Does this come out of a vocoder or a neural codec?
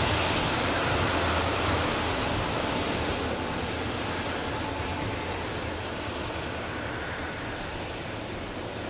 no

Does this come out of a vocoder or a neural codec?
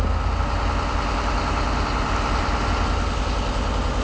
no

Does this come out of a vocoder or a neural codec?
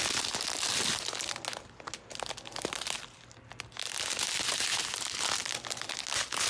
no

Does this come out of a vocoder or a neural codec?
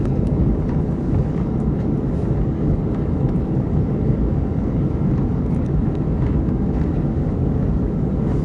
yes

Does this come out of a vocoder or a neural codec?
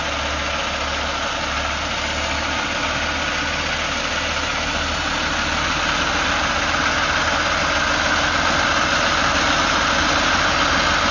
no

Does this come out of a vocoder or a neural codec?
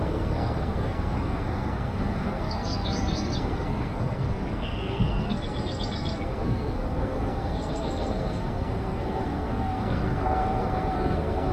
yes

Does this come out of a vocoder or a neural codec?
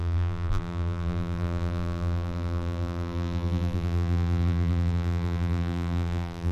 yes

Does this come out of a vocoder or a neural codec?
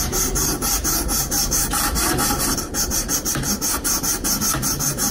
yes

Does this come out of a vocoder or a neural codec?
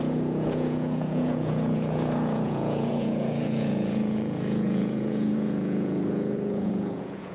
yes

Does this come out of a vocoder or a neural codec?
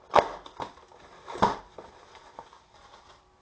no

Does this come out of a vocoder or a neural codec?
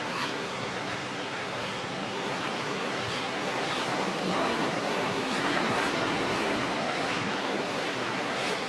yes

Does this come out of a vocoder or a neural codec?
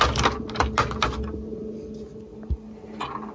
no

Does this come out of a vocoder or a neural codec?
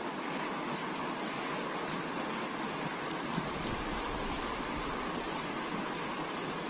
no